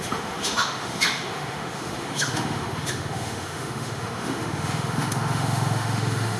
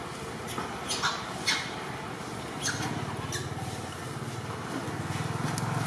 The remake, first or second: first